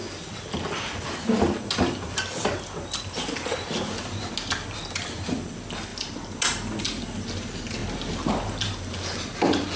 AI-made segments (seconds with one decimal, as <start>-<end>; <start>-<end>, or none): none